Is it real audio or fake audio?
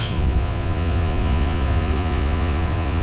fake